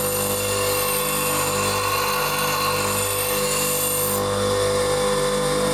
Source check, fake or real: real